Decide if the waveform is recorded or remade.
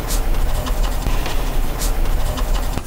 recorded